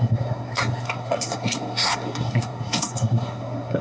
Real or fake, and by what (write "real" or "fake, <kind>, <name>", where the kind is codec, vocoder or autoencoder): fake, codec, SNAC